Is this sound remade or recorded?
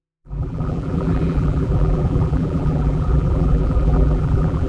remade